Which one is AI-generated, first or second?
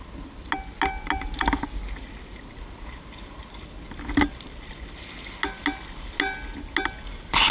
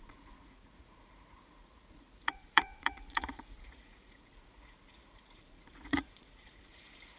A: second